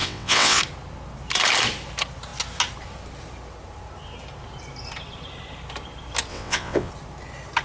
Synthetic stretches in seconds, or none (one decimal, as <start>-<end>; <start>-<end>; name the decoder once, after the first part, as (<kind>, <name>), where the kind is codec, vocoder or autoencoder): 0.0-0.6 (vocoder, WaveNeXt); 6.3-6.9